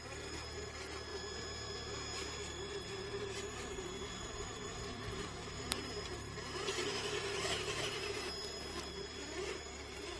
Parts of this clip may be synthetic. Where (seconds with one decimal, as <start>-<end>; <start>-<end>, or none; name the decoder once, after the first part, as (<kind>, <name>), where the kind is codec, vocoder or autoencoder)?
0.0-1.1 (vocoder, BigVGAN v2); 2.7-10.2